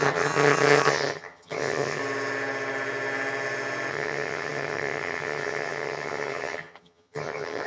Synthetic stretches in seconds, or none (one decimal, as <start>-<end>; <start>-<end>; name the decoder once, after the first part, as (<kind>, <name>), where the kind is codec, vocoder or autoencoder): 0.0-2.0 (vocoder, HiFi-GAN); 3.9-7.7